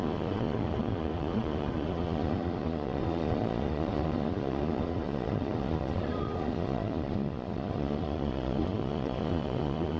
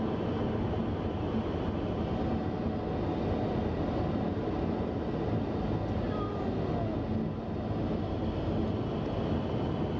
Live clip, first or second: second